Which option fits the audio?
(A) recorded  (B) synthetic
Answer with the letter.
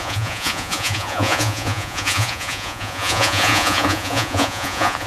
B